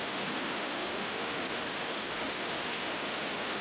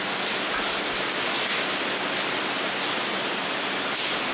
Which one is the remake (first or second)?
first